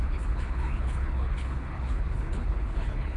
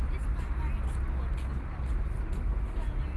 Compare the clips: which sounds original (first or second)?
second